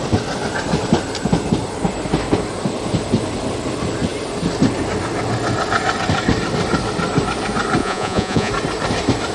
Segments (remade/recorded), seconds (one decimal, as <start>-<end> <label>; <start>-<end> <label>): 0.0-7.8 recorded; 7.8-8.5 remade; 8.5-9.3 recorded